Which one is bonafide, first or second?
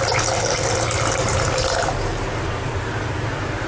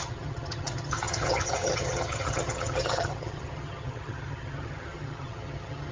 first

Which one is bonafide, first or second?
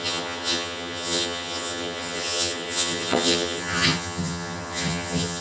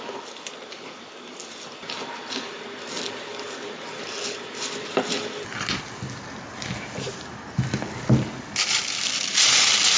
second